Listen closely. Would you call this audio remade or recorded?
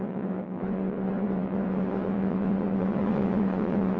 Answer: remade